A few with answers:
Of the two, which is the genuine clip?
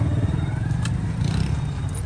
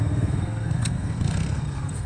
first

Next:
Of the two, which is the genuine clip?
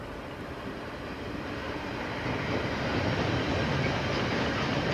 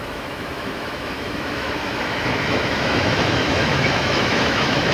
first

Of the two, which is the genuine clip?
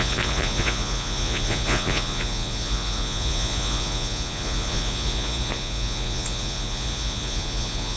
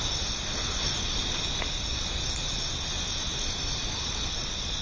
second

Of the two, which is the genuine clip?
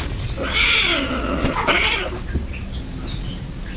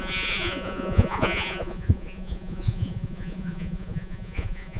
first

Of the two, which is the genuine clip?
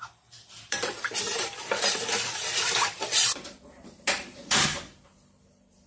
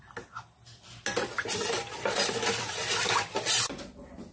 second